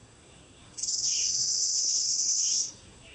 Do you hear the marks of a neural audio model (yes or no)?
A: yes